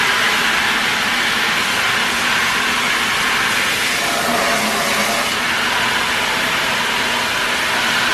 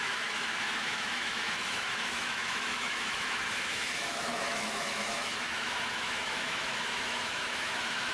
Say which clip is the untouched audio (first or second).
first